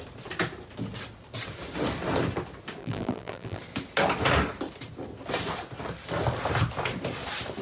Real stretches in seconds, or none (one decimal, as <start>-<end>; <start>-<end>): 0.0-2.8; 3.6-7.6